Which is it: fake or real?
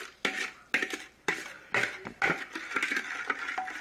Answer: real